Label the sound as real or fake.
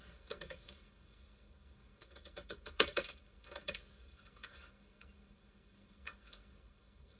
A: fake